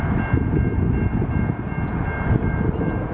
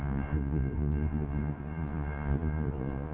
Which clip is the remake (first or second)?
second